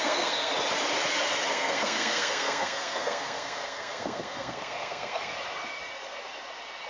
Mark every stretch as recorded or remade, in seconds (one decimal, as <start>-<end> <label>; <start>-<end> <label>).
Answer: 0.0-0.5 remade; 0.5-1.5 recorded; 1.5-5.3 remade; 5.3-6.9 recorded